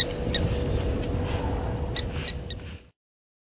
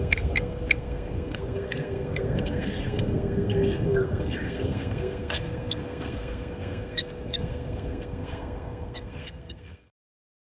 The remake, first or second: second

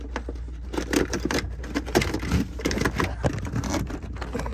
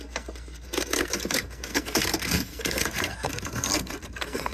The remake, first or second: second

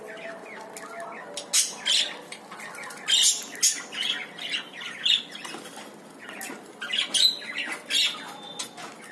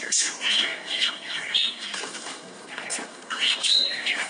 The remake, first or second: second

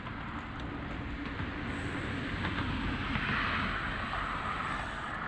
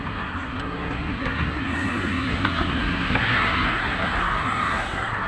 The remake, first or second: second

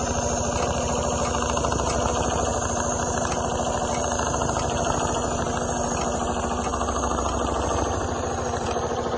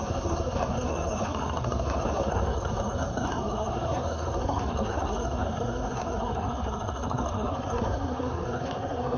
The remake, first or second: second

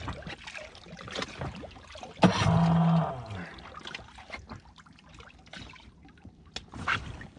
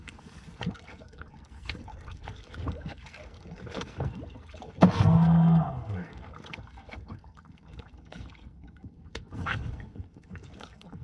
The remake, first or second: second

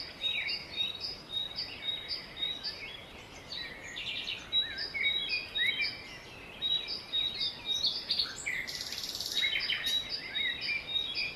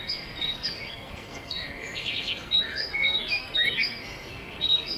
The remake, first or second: second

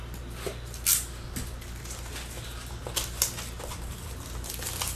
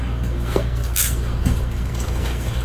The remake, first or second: second